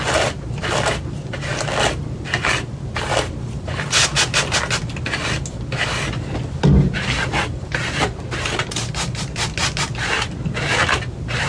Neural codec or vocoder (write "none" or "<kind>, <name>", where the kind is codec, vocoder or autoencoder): none